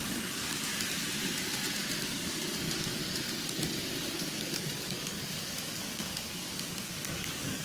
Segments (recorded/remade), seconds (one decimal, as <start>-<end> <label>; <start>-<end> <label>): 0.0-0.7 remade; 0.7-2.0 recorded; 2.0-3.0 remade; 3.0-4.0 recorded; 4.0-7.6 remade

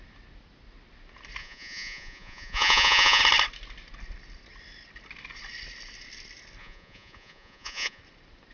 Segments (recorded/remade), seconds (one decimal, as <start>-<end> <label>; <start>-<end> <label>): 0.0-1.4 recorded; 1.4-3.2 remade; 3.2-6.6 recorded; 6.6-8.0 remade; 8.0-8.5 recorded